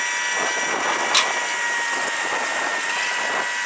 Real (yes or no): yes